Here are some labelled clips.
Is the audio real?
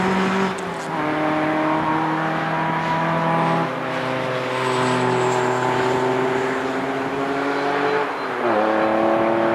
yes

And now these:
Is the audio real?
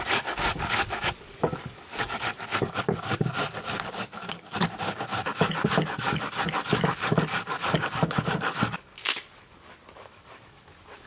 no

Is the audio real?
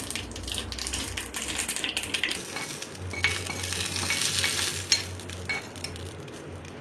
yes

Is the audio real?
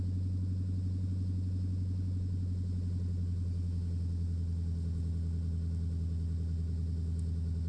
yes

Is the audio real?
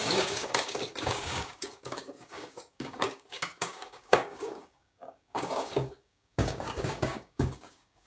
no